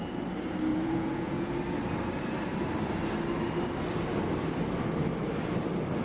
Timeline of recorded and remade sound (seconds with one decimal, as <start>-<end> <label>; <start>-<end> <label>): 0.0-0.7 recorded; 0.7-1.6 remade; 1.6-6.0 recorded